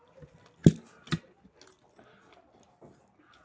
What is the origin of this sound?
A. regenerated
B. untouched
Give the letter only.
B